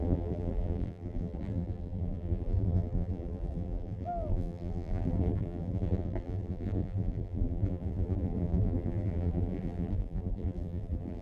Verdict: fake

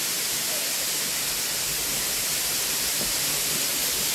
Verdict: real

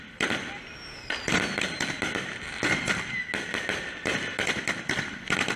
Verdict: real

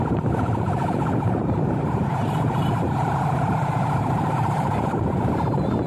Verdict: fake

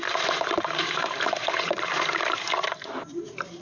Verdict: fake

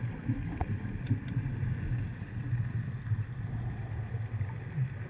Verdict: fake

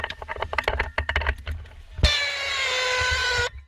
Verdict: real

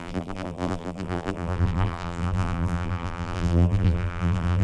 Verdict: fake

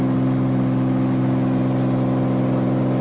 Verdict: real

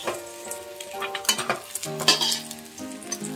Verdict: real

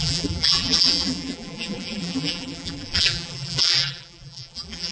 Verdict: fake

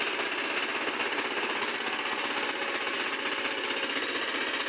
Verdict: real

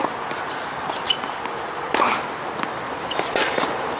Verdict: real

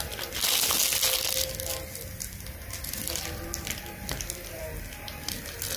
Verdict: real